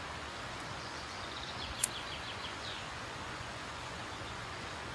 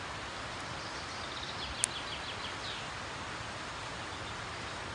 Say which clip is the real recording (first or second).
second